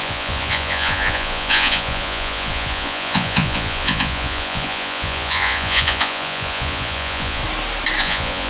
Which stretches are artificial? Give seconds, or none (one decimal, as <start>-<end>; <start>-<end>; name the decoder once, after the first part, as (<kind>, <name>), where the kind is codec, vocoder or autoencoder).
0.0-7.4 (vocoder, Vocos); 8.0-8.5

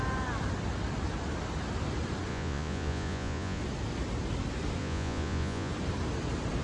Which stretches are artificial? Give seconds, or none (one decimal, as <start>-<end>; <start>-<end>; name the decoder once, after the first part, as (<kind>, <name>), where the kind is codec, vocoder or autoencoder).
2.3-3.6 (vocoder, Vocos); 4.8-5.7

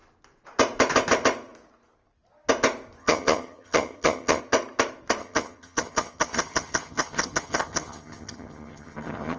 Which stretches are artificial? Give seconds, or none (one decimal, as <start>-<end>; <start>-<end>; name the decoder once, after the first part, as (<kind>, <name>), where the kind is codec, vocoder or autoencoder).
3.0-4.4 (vocoder, HiFi-GAN); 5.2-9.4

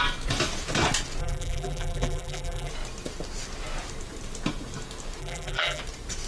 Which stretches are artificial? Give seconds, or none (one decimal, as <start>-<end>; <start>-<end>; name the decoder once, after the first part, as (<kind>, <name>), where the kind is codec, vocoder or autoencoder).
1.2-2.7 (vocoder, BigVGAN v2); 5.2-5.8